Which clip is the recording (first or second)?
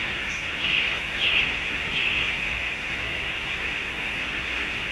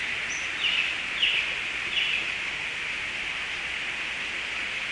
second